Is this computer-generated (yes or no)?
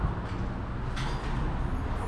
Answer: no